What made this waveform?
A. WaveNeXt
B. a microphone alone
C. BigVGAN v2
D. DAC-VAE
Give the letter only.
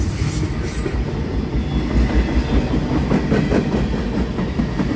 B